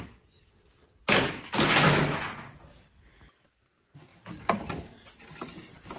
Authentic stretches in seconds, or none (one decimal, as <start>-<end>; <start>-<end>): 0.8-2.4; 4.1-4.7